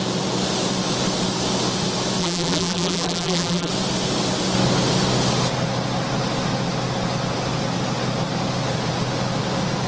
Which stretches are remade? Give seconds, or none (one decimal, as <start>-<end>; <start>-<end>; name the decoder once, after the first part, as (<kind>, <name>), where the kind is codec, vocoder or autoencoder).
2.2-3.7 (vocoder, BigVGAN v2)